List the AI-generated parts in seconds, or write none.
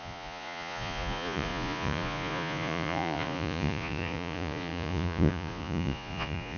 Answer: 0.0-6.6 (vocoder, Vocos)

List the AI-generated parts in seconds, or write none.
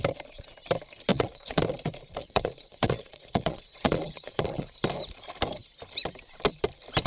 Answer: 1.1-1.6 (vocoder, Vocos); 2.2-4.7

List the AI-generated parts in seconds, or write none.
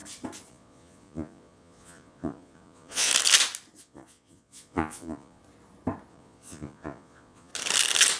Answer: 0.5-3.1 (vocoder, Vocos); 3.8-5.4; 6.1-7.5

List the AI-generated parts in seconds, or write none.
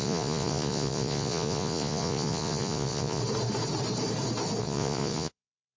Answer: 0.0-3.2 (vocoder, Vocos); 4.6-5.8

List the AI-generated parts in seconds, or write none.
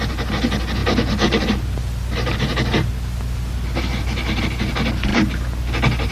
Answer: none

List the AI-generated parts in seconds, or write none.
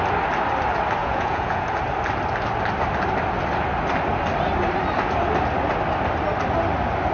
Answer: 1.0-1.7 (vocoder, Vocos)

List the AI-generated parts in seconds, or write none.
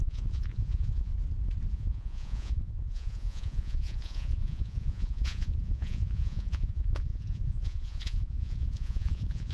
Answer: 0.0-1.1 (vocoder, Vocos); 1.7-9.5